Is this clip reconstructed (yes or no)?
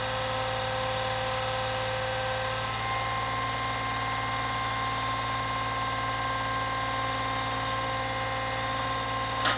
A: no